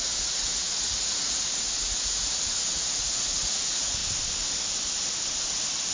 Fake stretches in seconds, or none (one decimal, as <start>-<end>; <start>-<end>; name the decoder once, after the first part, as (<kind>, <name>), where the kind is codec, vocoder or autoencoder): 0.0-4.0 (vocoder, Vocos)